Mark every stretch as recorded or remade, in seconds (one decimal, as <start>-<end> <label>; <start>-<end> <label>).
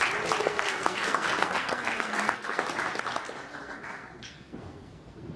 0.0-0.4 recorded; 0.4-2.6 remade; 2.6-3.5 recorded; 3.5-5.4 remade